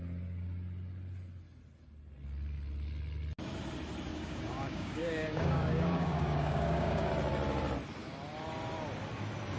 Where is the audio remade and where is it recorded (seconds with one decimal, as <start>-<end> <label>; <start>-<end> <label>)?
0.0-4.1 recorded; 4.1-7.1 remade; 7.1-9.6 recorded